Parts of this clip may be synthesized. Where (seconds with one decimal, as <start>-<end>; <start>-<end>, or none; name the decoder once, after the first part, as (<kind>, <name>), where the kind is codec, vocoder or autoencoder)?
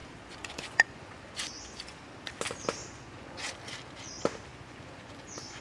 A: 0.0-2.1 (vocoder, Vocos); 2.8-3.5; 4.5-5.6